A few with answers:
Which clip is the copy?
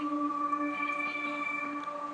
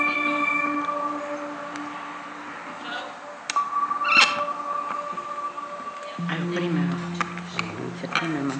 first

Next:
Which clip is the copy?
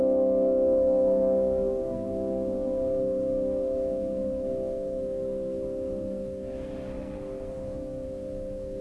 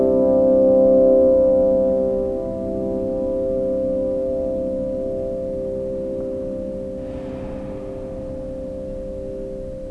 first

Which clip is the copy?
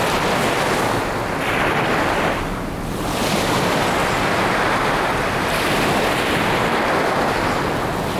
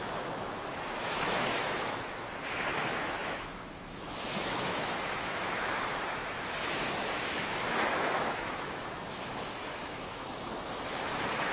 second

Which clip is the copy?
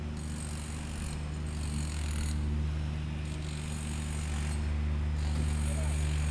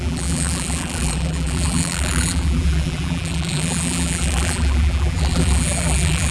second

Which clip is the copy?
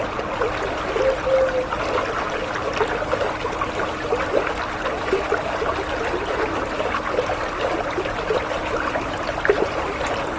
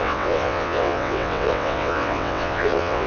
second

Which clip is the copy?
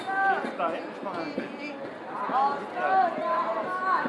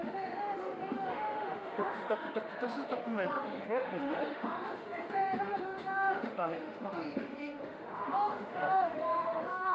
second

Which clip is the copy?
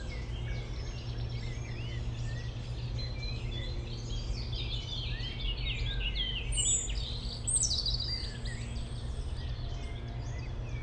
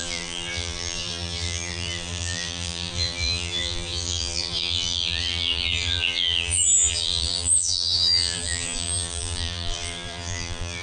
second